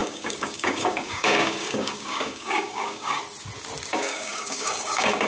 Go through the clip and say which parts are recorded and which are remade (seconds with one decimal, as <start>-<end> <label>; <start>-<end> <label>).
0.0-3.2 remade; 3.2-3.9 recorded; 3.9-5.3 remade